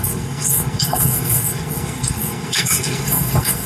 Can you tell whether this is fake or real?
fake